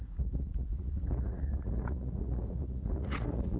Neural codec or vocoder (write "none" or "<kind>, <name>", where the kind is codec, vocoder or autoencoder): vocoder, Vocos